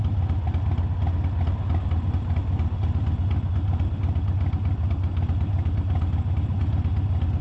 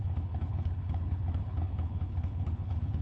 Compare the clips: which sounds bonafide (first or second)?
first